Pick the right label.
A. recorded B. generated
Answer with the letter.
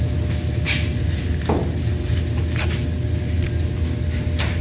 A